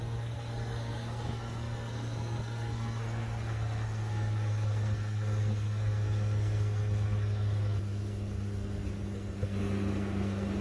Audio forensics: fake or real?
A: fake